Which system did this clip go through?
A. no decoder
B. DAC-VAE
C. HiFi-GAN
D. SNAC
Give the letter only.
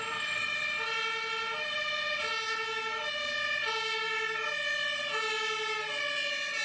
A